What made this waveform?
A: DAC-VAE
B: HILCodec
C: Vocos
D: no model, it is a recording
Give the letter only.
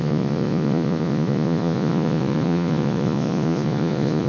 C